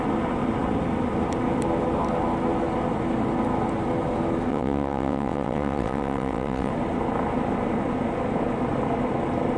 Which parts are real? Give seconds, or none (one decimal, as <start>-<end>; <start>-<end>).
0.0-4.5; 6.7-9.6